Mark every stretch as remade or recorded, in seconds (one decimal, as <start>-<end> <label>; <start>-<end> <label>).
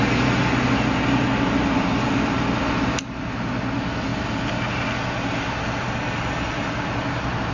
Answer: 0.0-7.5 recorded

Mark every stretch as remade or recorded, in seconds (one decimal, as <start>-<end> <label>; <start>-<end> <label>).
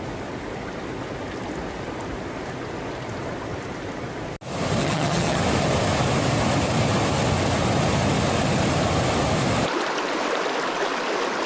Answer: 0.0-4.8 recorded; 4.8-5.4 remade; 5.4-11.5 recorded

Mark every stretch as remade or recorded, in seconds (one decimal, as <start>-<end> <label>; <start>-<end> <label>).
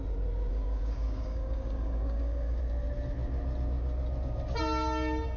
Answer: 0.0-0.5 recorded; 0.5-2.6 remade; 2.6-5.4 recorded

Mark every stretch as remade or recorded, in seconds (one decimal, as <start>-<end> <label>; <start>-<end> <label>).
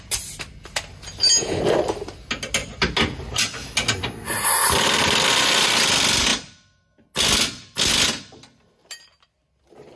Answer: 0.0-10.0 recorded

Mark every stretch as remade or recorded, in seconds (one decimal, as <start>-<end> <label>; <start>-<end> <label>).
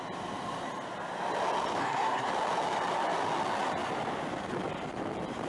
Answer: 0.0-1.8 recorded; 1.8-2.3 remade; 2.3-5.5 recorded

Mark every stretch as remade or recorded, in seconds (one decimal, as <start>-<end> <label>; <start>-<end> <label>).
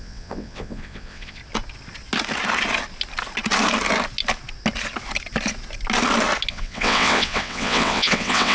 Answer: 0.0-1.4 remade; 1.4-6.5 recorded; 6.5-8.5 remade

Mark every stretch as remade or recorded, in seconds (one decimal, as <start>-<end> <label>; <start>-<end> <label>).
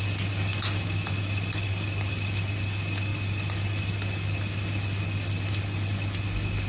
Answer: 0.0-6.7 recorded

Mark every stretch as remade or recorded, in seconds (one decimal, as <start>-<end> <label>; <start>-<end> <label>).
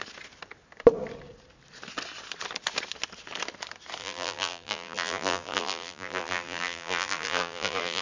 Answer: 0.0-4.0 recorded; 4.0-8.0 remade